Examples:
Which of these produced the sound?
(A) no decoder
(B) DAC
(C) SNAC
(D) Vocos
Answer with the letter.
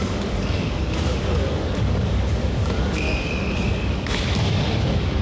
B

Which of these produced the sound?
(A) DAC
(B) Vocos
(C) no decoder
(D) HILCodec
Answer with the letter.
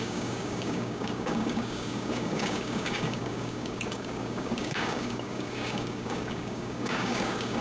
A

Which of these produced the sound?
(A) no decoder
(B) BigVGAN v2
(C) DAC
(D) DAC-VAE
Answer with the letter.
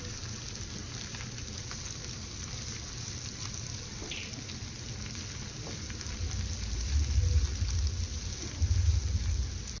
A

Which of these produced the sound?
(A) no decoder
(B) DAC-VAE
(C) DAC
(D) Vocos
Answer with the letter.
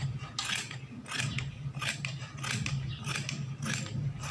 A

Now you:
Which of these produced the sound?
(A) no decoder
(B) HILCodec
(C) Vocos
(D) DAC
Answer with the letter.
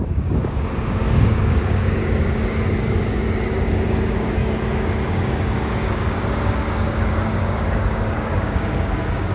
D